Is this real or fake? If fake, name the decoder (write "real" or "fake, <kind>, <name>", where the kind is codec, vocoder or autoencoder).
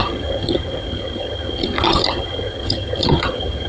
fake, vocoder, HiFi-GAN